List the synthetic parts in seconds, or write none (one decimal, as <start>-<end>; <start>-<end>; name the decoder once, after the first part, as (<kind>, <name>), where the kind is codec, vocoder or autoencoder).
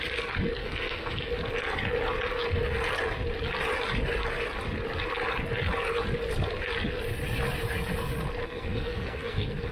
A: 0.6-1.3 (codec, SNAC); 8.4-9.7